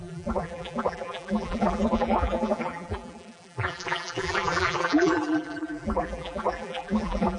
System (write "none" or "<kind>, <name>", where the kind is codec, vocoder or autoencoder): vocoder, BigVGAN v2